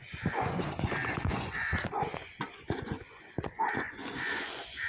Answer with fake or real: fake